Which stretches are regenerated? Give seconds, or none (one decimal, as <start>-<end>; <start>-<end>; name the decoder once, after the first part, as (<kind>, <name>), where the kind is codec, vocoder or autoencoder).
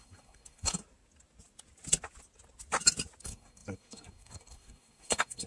0.0-0.8 (codec, SNAC); 3.2-5.5